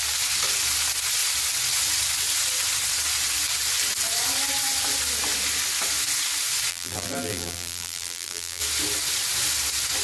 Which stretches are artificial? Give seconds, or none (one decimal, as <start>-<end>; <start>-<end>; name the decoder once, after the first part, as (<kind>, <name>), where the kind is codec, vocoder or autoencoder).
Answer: 6.7-8.6 (vocoder, BigVGAN v2)